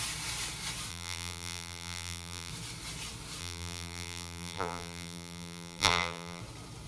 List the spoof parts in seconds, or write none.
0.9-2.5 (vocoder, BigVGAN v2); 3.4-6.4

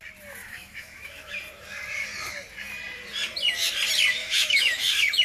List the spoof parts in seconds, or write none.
0.4-1.4 (autoencoder, DAC-VAE); 4.2-5.2